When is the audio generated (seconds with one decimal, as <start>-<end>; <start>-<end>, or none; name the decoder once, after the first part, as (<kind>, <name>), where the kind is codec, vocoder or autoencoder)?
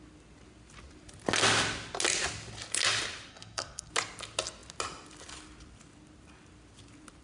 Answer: 3.3-3.9 (codec, SNAC)